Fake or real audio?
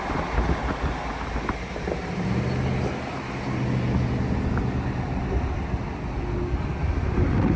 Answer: real